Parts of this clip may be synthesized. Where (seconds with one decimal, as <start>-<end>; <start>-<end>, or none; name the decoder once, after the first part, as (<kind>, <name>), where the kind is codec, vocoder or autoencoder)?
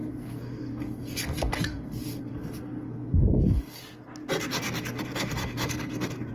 0.0-3.8 (codec, SNAC); 4.5-6.3